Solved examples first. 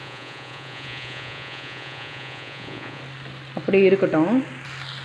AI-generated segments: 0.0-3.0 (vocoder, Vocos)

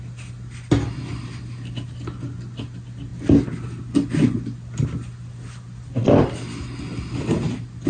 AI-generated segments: none

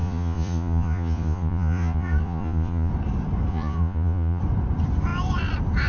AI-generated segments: 0.0-2.9 (vocoder, Vocos); 3.5-4.4